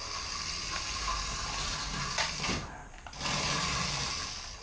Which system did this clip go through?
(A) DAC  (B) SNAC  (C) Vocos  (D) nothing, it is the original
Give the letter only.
D